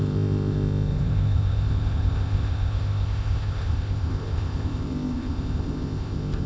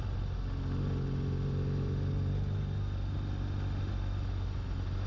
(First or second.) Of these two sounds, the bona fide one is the second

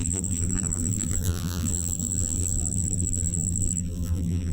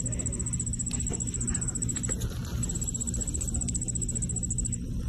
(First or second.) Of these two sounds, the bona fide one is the second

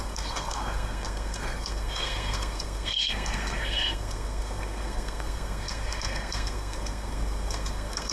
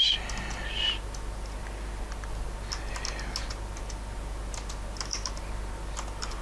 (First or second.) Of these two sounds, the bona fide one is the second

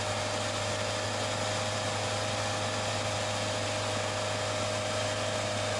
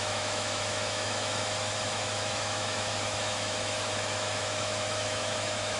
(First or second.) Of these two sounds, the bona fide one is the first